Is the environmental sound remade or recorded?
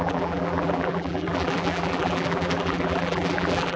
remade